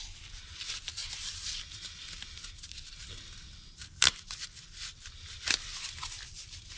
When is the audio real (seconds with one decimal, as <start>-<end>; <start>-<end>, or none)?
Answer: 0.0-1.0; 2.3-6.8

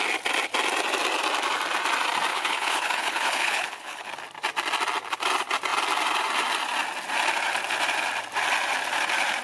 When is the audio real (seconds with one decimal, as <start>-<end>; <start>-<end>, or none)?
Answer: 0.0-2.3; 4.1-9.4